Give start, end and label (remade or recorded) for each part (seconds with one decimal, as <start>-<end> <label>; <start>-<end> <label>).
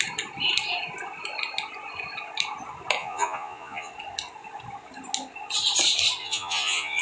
0.0-3.0 recorded; 3.0-3.9 remade; 3.9-6.2 recorded; 6.2-7.0 remade